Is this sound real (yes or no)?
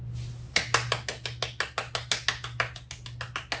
yes